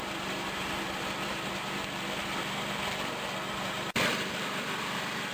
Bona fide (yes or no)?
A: no